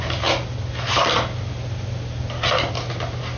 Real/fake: real